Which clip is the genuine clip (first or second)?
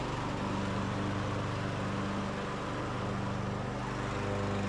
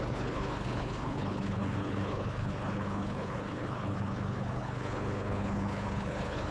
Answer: first